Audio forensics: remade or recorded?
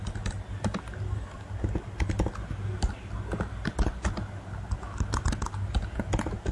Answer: recorded